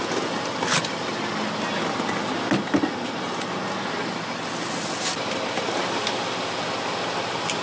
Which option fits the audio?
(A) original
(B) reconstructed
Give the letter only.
A